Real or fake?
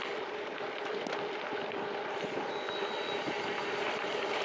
real